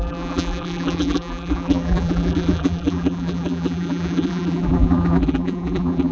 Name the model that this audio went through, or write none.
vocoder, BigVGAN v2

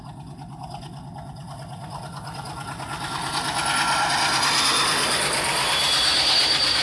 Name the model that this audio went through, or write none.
none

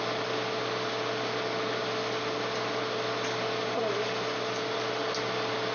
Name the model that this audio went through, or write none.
none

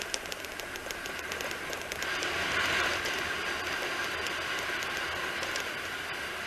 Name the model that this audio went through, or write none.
none